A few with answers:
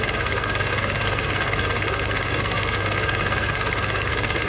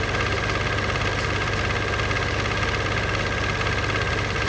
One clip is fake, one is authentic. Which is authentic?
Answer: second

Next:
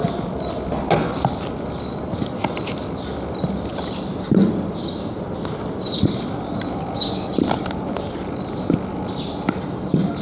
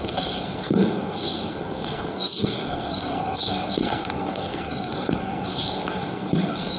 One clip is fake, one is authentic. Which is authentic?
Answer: first